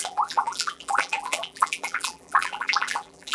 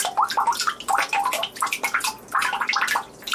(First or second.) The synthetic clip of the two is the first